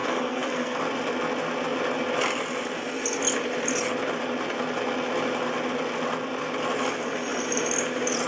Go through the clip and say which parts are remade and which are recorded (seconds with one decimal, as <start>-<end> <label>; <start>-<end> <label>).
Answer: 0.0-0.8 remade; 0.8-8.3 recorded